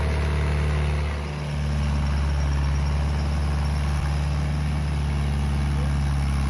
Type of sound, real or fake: real